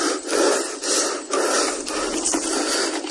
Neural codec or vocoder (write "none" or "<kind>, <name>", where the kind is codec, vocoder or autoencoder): none